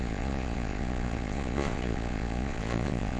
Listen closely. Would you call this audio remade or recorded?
remade